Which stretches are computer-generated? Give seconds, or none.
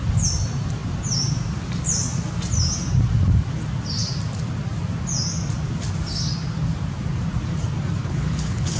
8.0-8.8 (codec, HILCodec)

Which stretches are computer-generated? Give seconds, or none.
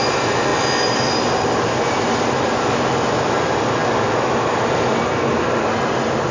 none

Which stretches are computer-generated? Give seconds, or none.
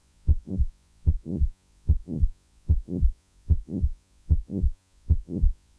0.0-5.8 (vocoder, Vocos)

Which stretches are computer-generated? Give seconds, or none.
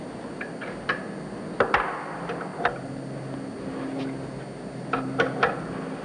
none